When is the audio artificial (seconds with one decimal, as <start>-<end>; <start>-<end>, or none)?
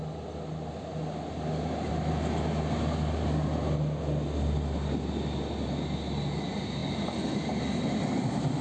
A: none